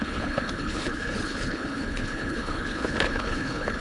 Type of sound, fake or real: fake